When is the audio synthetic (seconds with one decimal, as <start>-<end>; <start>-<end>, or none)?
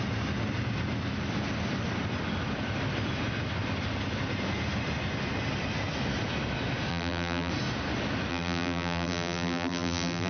6.9-7.5; 8.3-10.3